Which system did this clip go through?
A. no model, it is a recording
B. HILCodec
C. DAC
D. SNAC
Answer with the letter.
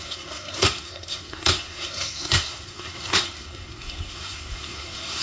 D